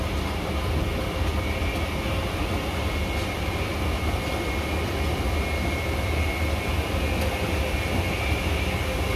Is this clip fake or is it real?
real